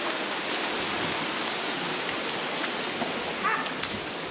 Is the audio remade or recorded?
recorded